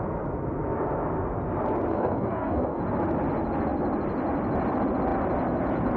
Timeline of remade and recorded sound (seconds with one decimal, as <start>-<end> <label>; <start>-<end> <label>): 0.0-1.9 recorded; 1.9-2.8 remade; 2.8-6.0 recorded